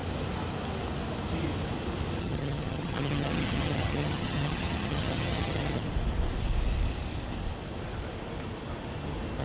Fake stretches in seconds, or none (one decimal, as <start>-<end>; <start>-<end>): 2.2-5.8